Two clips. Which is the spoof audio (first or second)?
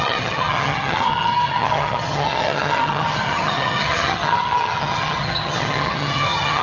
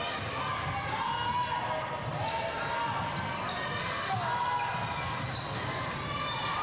first